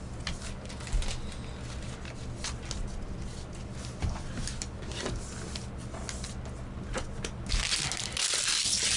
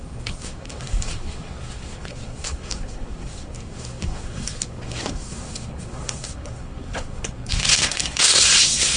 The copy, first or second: second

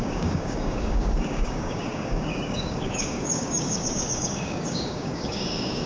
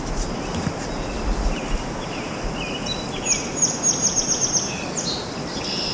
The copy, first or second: first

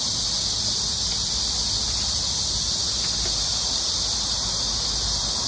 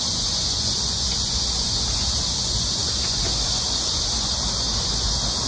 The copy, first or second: second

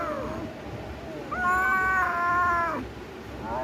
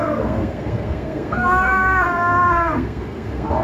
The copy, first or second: second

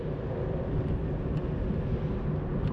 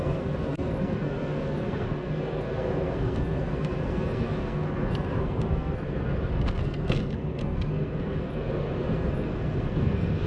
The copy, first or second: second